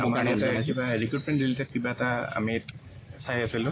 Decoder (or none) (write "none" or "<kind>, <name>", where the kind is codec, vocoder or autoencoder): vocoder, BigVGAN v2